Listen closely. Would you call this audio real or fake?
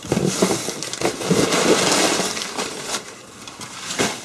real